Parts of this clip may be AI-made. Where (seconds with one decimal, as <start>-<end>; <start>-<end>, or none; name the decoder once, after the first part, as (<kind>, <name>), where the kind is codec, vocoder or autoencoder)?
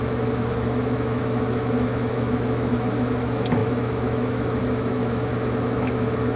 0.0-6.3 (autoencoder, DAC-VAE)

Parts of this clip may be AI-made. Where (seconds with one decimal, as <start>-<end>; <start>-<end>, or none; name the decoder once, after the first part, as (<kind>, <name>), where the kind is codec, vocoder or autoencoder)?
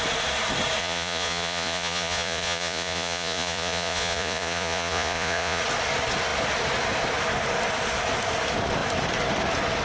0.8-5.6 (vocoder, Vocos)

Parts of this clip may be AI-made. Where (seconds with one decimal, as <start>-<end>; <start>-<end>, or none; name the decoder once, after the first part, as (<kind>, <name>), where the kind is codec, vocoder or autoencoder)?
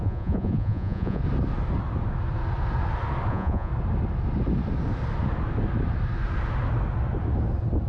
0.0-1.2 (vocoder, Vocos); 3.3-3.7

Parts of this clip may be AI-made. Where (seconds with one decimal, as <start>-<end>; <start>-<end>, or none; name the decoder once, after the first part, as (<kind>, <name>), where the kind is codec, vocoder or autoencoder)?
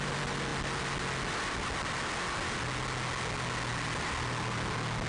none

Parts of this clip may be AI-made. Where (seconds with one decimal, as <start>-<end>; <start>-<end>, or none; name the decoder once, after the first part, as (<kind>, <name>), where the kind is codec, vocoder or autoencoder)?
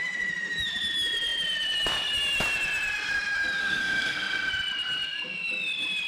3.6-4.5 (codec, SNAC)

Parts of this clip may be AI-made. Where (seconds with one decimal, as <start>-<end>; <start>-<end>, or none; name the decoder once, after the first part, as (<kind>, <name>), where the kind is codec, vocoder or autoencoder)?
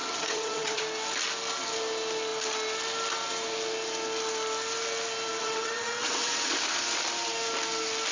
0.0-0.8 (vocoder, WaveNeXt); 5.4-6.5